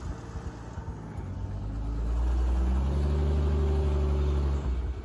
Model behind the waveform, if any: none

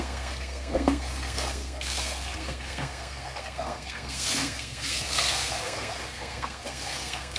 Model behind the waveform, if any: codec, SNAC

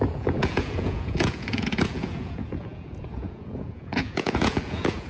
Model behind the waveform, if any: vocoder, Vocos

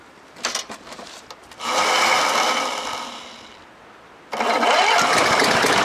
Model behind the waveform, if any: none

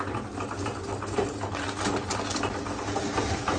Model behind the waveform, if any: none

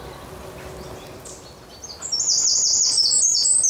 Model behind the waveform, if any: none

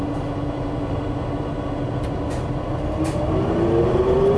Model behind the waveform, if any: none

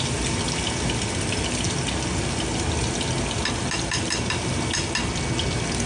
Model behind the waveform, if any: none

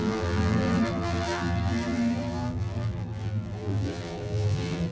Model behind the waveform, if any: vocoder, BigVGAN v2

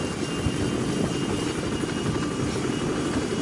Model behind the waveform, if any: none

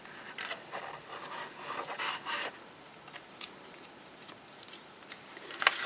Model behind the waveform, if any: none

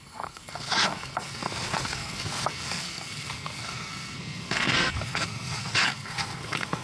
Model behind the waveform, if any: codec, SNAC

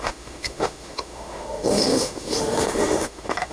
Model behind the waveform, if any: autoencoder, DAC-VAE